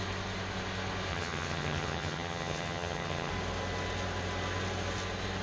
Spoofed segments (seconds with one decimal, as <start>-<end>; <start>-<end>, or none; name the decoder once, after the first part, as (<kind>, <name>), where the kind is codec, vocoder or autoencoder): 1.1-3.3 (vocoder, HiFi-GAN)